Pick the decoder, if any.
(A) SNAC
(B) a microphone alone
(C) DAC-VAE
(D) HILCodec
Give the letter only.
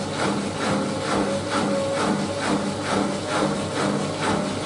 B